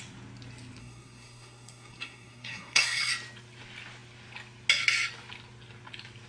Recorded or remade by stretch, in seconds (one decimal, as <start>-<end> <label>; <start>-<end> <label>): 0.0-0.8 recorded; 0.8-3.1 remade; 3.1-6.3 recorded